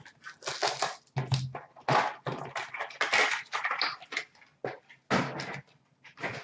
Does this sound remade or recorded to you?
recorded